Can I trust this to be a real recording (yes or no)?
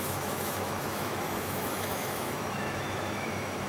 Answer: no